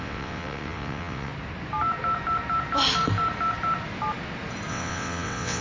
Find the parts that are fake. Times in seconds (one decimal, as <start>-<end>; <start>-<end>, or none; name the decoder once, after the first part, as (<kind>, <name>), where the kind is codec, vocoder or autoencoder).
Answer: 0.0-1.3 (vocoder, WaveNeXt); 4.7-5.6

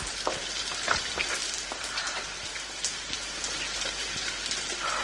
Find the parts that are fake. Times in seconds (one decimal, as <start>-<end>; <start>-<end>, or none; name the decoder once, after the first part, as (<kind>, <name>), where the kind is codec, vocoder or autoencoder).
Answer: none

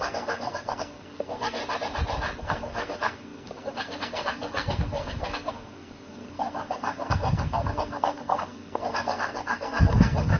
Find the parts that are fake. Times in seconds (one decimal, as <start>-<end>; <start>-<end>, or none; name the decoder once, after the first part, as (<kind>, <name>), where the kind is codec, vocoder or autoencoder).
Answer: 0.0-1.6 (codec, SNAC); 2.4-10.4

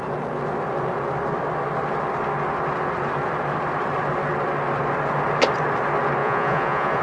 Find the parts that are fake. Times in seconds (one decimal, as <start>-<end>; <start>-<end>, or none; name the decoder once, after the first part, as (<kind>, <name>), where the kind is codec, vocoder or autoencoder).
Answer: 6.2-7.0 (vocoder, Vocos)

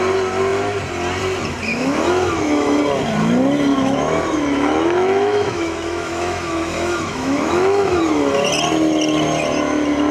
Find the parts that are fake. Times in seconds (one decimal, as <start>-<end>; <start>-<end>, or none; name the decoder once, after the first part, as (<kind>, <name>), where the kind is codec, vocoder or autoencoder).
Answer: 1.7-2.8 (autoencoder, DAC-VAE); 3.7-8.0

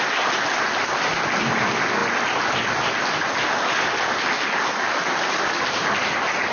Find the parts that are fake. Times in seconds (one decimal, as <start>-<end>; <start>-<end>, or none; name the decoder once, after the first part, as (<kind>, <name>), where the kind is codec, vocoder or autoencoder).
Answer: none

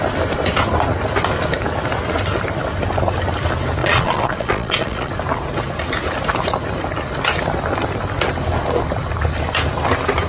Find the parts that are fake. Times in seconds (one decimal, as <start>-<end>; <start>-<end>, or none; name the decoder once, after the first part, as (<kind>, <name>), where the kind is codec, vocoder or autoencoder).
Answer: 3.8-5.1 (vocoder, Vocos)

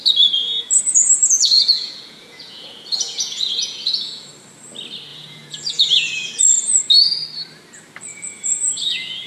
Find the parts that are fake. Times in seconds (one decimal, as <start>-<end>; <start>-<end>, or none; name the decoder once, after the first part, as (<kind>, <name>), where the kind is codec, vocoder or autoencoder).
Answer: 0.4-4.3 (vocoder, Vocos); 5.1-6.4; 8.1-9.3